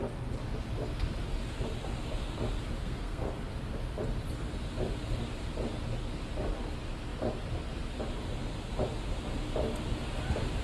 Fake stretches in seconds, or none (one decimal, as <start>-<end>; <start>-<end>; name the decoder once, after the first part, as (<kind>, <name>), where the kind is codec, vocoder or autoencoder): 2.8-3.5 (codec, SNAC)